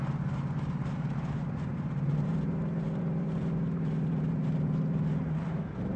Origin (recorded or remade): remade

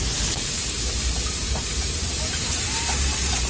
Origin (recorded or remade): remade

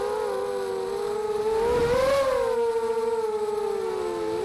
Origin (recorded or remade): recorded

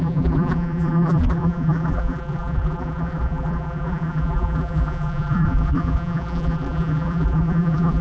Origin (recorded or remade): remade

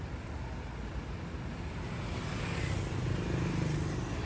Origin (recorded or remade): recorded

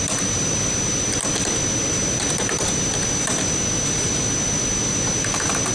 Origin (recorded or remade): recorded